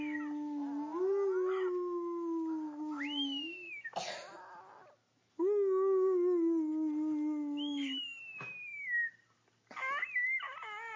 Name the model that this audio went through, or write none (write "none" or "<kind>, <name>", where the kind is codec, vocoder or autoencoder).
none